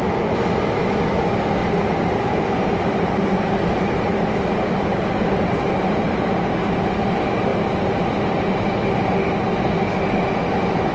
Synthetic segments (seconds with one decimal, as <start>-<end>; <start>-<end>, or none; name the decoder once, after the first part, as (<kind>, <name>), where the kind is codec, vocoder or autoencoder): 1.6-6.3 (vocoder, BigVGAN v2); 7.5-8.0

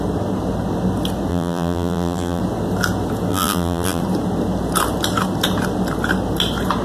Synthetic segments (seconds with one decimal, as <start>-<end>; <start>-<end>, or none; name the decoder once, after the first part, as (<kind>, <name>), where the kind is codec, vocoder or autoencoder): 1.3-2.4 (vocoder, BigVGAN v2); 3.3-4.0

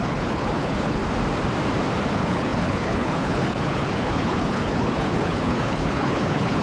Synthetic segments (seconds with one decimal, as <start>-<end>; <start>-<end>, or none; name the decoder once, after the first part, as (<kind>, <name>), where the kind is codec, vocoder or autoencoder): 0.0-1.0 (codec, HILCodec); 2.1-6.6

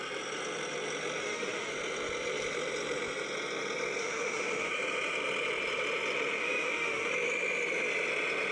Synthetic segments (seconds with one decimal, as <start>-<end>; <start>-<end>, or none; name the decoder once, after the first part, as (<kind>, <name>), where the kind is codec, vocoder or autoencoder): 1.2-1.7 (autoencoder, DAC-VAE); 4.0-4.7; 6.4-7.1

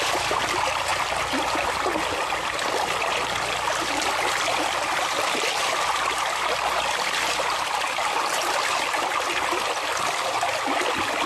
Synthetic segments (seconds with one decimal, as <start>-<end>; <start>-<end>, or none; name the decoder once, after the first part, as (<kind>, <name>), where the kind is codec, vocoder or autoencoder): none

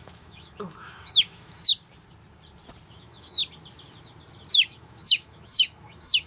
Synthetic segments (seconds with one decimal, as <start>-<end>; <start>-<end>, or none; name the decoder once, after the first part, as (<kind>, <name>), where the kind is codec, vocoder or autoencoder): 0.0-1.7 (autoencoder, DAC-VAE); 2.9-3.4; 4.5-6.3

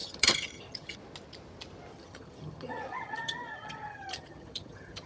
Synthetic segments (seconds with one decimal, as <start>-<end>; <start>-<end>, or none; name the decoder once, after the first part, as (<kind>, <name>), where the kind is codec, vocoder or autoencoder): 0.0-1.0 (vocoder, HiFi-GAN); 1.9-5.1

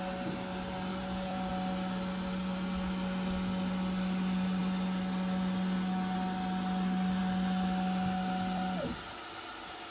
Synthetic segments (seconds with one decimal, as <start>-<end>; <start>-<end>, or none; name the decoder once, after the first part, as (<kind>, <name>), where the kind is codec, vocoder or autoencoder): 0.9-1.5 (vocoder, Vocos)